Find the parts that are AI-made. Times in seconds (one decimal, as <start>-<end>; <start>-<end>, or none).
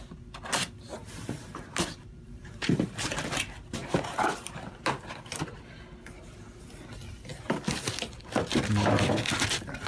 1.0-3.2; 3.8-5.1